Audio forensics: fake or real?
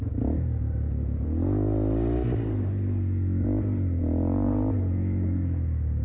real